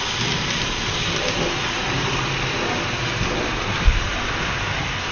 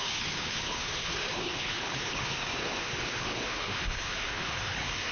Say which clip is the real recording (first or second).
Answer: first